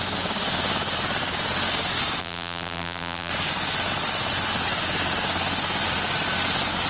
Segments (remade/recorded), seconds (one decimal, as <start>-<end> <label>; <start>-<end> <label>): 0.0-2.2 recorded; 2.2-3.3 remade; 3.3-6.9 recorded

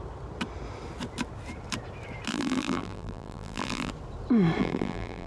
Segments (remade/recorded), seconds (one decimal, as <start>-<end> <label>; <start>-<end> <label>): 0.0-2.3 recorded; 2.3-3.9 remade; 3.9-4.6 recorded; 4.6-5.3 remade

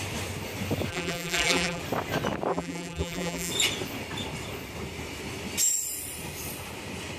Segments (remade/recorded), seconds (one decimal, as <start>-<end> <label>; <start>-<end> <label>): 0.0-0.9 recorded; 0.9-1.8 remade; 1.8-2.5 recorded; 2.5-3.5 remade; 3.5-7.2 recorded

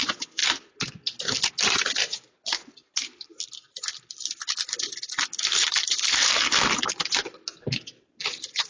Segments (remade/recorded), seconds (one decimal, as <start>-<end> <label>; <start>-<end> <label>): 0.0-3.1 recorded; 3.1-6.7 remade; 6.7-8.7 recorded

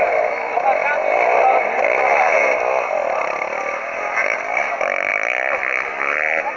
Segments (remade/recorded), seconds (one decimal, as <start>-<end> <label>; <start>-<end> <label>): 0.0-0.8 recorded; 0.8-3.6 remade; 3.6-5.1 recorded; 5.1-5.8 remade; 5.8-6.6 recorded